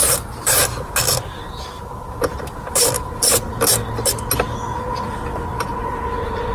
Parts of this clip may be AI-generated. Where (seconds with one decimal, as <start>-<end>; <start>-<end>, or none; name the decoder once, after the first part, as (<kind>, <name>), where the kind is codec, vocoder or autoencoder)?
0.0-3.9 (vocoder, BigVGAN v2); 4.9-5.5

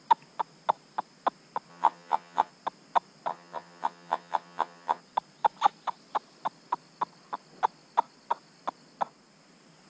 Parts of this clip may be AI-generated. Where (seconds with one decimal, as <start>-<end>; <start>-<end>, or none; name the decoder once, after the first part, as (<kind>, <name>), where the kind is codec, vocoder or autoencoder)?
1.7-2.5 (vocoder, HiFi-GAN); 3.3-5.0

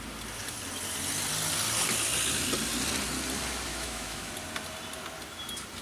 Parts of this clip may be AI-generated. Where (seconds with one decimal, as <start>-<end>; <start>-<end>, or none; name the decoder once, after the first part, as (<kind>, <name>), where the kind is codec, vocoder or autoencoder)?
3.7-4.3 (autoencoder, DAC-VAE)

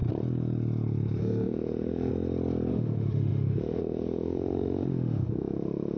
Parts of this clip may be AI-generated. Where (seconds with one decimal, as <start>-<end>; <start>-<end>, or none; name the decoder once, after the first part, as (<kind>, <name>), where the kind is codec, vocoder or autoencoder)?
1.2-2.1 (autoencoder, DAC-VAE); 2.7-6.0

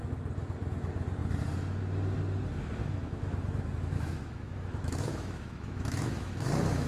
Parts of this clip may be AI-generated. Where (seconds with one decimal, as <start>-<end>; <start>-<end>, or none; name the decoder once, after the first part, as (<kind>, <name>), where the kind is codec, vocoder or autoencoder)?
2.8-6.9 (autoencoder, DAC-VAE)

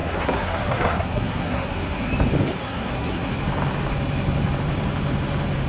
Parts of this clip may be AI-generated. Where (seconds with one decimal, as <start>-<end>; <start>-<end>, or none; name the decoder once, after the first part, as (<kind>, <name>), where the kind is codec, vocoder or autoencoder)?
0.0-2.1 (codec, SNAC); 2.6-3.3

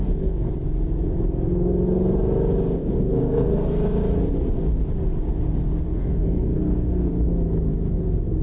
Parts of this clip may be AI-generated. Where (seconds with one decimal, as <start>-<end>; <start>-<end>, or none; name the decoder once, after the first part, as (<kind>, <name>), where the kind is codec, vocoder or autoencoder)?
0.0-0.5 (codec, SNAC); 2.8-3.8; 5.9-7.1

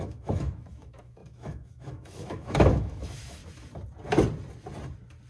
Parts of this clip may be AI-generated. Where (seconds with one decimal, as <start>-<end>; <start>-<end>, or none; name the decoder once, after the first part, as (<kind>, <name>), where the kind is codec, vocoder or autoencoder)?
0.0-3.4 (autoencoder, DAC-VAE)